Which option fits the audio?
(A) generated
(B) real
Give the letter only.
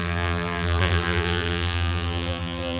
A